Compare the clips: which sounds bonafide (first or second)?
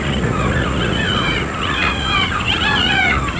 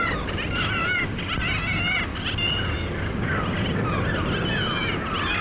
second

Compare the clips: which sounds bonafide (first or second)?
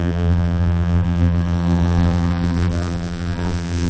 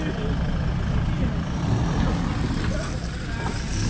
second